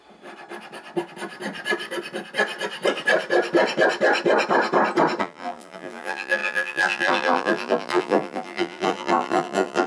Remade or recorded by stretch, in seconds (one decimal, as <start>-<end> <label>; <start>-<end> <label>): 0.0-5.2 recorded; 5.2-9.9 remade